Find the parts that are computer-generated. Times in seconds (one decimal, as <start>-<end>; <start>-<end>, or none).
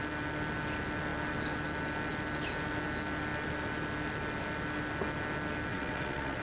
5.7-6.4